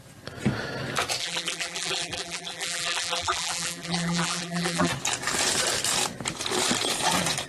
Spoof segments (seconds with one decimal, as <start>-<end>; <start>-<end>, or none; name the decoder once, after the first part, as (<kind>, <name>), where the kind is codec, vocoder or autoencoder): 1.2-4.9 (vocoder, BigVGAN v2)

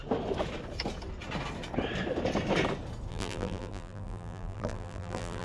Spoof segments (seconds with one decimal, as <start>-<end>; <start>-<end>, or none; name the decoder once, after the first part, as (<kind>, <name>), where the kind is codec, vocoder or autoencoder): 3.1-5.4 (vocoder, BigVGAN v2)